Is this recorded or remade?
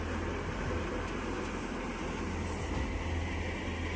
recorded